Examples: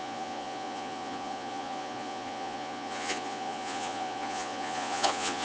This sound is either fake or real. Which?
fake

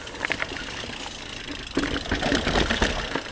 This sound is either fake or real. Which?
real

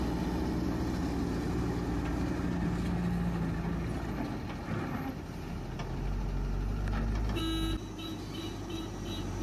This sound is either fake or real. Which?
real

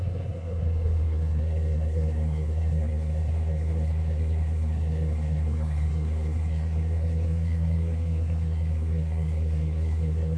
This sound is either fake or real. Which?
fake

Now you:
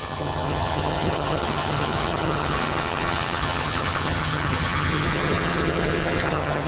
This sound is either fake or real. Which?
fake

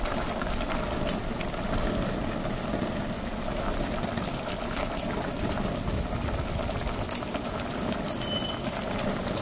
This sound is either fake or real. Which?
real